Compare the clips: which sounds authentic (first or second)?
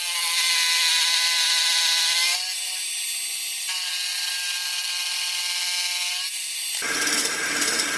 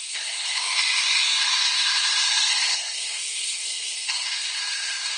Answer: first